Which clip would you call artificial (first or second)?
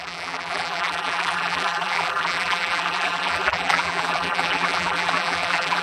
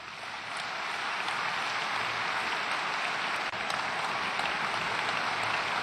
first